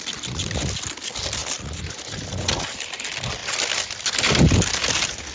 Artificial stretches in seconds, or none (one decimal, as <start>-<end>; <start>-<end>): none